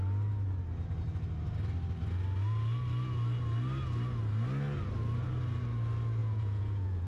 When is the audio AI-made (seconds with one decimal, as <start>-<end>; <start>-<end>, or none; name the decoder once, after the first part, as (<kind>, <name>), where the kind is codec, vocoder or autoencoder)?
6.2-7.1 (vocoder, Vocos)